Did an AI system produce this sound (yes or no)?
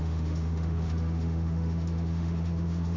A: yes